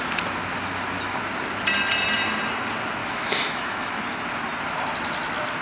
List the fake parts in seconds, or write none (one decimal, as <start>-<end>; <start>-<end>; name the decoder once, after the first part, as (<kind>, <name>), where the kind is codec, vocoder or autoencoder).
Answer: 3.0-4.0 (autoencoder, DAC-VAE)